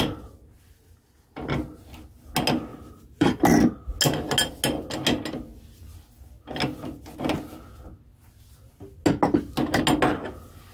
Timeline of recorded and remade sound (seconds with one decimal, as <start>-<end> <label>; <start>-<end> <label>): 0.0-2.7 recorded; 2.7-3.4 remade; 3.4-10.7 recorded